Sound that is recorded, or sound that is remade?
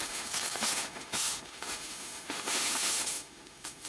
remade